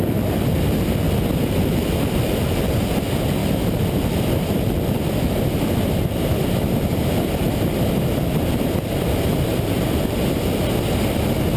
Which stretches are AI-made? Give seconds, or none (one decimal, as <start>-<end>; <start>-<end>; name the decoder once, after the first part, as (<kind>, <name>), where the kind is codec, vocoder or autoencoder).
none